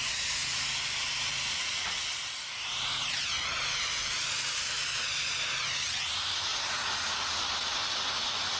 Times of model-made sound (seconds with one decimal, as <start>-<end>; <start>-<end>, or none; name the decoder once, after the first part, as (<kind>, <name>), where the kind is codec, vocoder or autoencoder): none